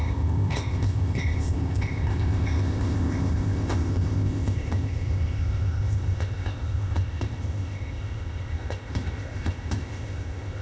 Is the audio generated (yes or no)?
yes